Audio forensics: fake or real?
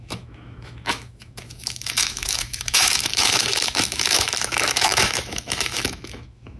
fake